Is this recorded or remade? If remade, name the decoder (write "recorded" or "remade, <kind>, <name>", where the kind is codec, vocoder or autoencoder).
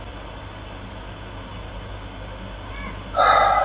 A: recorded